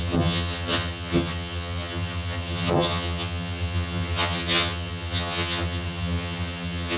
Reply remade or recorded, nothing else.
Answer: remade